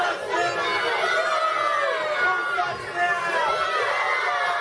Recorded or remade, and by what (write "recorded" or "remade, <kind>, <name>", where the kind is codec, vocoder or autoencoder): recorded